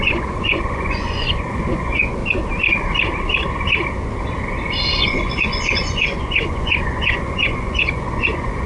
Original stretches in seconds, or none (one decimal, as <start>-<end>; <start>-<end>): 2.2-5.0